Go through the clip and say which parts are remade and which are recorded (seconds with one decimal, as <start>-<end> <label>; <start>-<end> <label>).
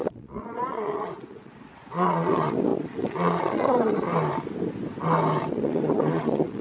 0.0-4.1 remade; 4.1-5.5 recorded; 5.5-6.6 remade